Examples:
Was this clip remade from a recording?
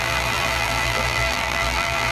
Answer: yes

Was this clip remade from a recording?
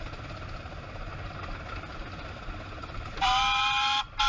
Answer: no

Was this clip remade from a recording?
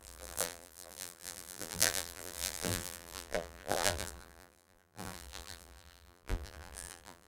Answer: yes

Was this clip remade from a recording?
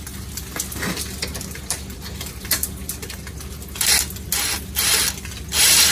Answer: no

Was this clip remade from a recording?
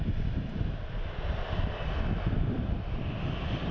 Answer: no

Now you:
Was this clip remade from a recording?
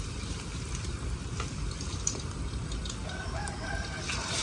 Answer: yes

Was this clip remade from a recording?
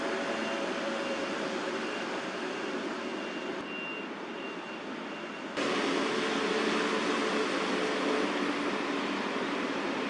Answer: no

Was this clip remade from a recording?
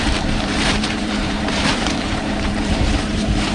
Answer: yes